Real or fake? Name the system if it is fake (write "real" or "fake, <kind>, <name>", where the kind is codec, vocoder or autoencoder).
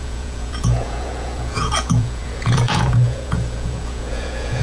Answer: fake, vocoder, Vocos